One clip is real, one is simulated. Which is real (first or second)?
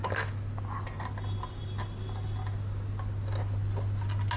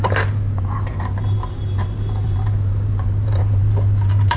first